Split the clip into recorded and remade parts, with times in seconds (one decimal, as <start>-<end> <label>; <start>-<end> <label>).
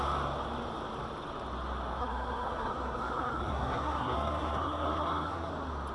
0.0-2.0 recorded; 2.0-5.5 remade; 5.5-5.9 recorded